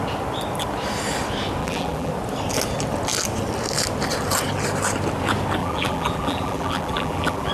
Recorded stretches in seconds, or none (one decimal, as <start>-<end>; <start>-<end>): 0.0-1.6; 2.1-5.6